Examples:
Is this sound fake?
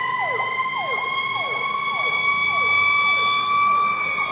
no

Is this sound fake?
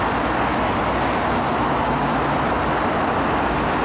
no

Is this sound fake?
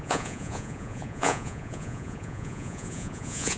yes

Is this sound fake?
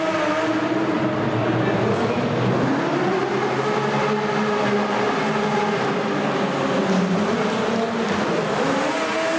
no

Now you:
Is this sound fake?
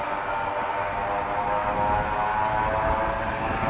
no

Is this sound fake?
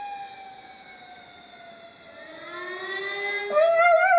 no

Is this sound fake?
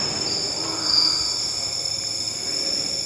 no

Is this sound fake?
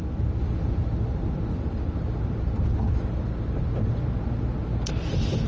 no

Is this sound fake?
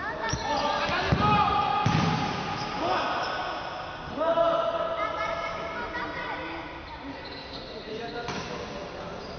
no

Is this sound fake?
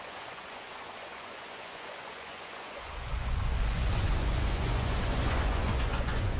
yes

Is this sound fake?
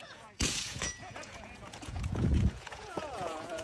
yes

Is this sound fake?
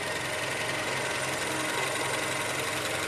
no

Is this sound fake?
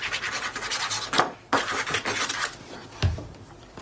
no